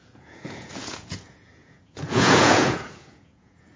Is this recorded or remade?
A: remade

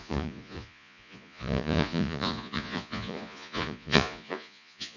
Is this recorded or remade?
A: remade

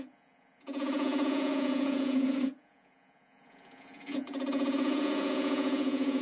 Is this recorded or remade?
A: remade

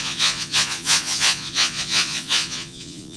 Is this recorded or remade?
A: remade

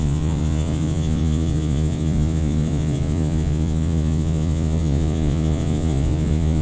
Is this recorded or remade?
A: remade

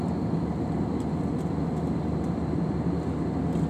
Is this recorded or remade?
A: recorded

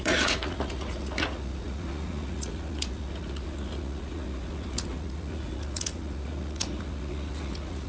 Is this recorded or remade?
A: remade